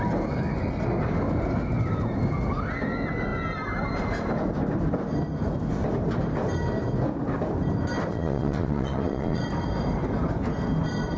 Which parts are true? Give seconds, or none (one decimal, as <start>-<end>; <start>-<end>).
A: 0.0-8.1; 9.4-11.2